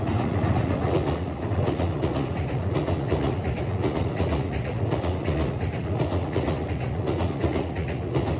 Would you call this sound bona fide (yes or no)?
no